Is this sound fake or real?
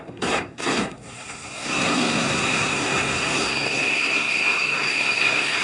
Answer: fake